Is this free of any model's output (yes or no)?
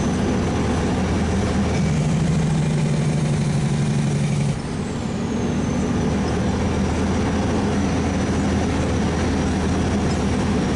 yes